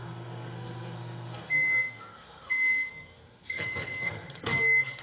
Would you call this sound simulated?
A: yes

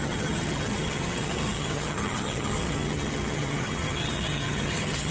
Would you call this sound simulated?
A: yes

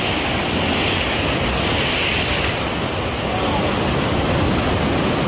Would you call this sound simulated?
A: no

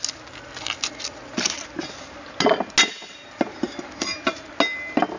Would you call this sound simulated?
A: no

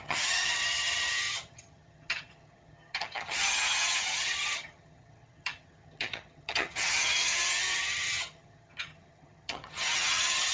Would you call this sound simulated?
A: yes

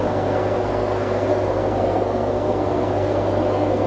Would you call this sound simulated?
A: yes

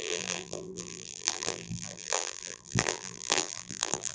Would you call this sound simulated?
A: yes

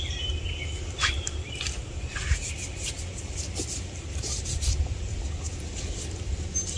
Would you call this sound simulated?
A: no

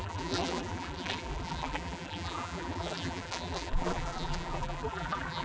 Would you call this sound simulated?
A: yes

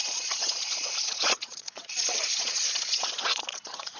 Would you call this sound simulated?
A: yes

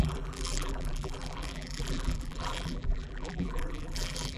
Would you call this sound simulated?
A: yes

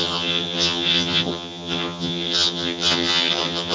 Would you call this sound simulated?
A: yes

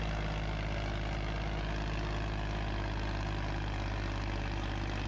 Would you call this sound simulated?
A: no